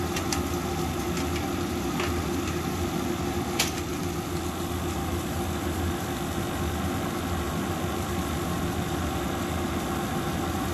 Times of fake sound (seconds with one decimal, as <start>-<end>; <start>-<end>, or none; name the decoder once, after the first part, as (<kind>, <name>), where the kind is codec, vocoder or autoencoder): none